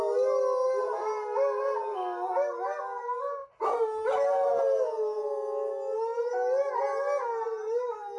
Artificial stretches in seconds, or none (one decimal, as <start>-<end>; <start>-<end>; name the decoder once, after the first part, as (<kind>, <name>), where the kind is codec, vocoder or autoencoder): none